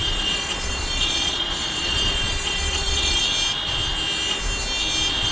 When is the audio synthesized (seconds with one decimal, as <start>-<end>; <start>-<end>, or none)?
0.0-3.2